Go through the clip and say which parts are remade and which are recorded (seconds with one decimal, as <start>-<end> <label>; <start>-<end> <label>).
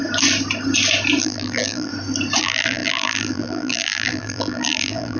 0.0-1.2 recorded; 1.2-1.9 remade; 1.9-2.4 recorded; 2.4-5.2 remade